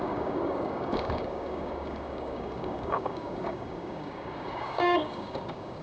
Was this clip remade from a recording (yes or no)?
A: yes